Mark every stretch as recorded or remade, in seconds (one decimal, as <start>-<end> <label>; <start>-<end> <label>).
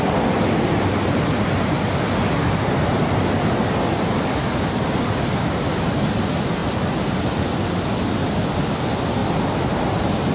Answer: 0.0-10.3 recorded